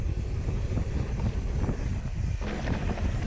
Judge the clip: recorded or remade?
recorded